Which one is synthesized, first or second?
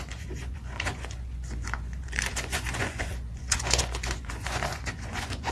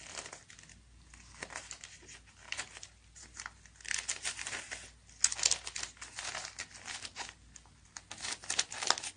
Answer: first